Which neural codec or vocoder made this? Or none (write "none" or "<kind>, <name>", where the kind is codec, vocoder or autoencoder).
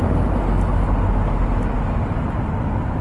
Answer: none